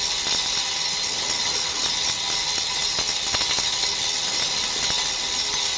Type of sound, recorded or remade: recorded